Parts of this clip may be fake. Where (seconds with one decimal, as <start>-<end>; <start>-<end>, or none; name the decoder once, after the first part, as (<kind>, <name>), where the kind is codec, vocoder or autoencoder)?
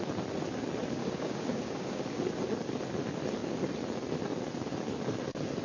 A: 1.0-2.2 (codec, DAC)